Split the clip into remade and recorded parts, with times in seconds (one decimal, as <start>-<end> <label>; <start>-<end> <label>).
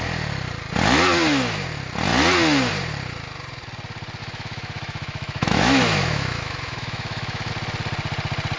0.0-4.2 recorded; 4.2-7.5 remade; 7.5-8.6 recorded